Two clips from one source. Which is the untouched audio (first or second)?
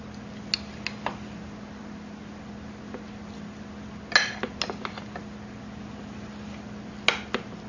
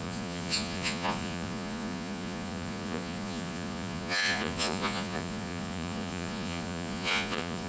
first